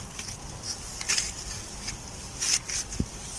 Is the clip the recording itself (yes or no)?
yes